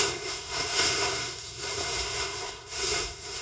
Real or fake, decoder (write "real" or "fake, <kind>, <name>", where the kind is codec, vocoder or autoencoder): fake, codec, SNAC